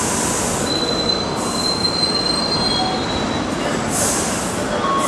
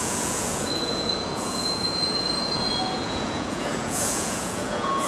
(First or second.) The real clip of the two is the first